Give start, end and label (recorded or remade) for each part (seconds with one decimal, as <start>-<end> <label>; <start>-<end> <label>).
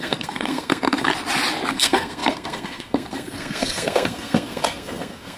0.0-1.1 remade; 1.1-1.7 recorded; 1.7-5.4 remade